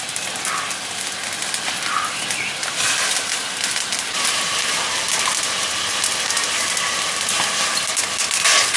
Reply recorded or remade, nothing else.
recorded